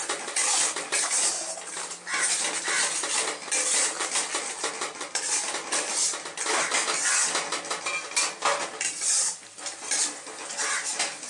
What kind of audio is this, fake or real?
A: real